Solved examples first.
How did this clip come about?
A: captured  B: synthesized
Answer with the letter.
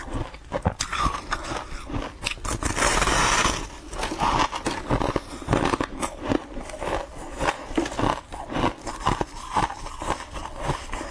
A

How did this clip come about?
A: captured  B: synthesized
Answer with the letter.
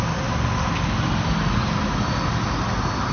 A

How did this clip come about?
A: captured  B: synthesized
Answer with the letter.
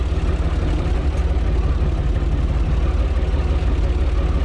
A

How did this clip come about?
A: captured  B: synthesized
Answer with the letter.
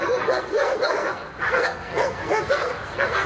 B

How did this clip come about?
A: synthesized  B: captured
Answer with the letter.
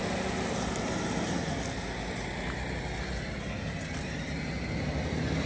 B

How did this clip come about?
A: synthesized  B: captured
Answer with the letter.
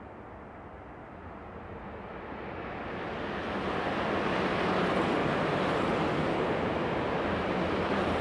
B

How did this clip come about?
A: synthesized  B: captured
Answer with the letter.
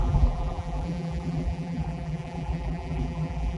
A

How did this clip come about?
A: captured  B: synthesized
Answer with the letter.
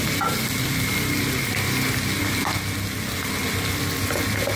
A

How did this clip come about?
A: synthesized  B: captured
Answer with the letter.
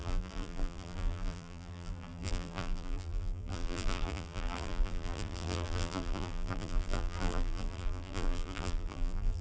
A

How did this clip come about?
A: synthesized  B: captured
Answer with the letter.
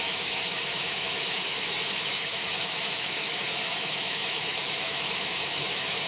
A